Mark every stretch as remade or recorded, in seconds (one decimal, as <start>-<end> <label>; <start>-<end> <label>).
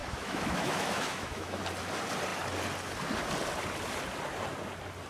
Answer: 0.0-1.6 remade; 1.6-5.1 recorded